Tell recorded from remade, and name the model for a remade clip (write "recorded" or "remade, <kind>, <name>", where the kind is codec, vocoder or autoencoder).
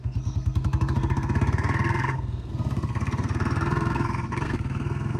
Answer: remade, codec, SNAC